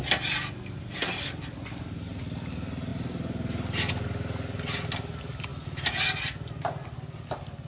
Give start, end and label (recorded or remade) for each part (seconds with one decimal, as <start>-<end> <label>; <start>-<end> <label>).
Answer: 0.0-7.7 recorded